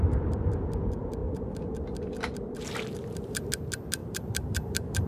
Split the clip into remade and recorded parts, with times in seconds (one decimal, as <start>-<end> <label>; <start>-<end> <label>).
0.0-1.2 recorded; 1.2-3.4 remade; 3.4-4.0 recorded; 4.0-5.1 remade